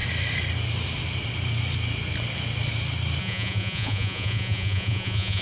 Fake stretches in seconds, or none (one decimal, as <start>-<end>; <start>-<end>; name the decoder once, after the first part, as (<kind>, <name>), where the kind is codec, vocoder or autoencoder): 3.2-5.4 (vocoder, Vocos)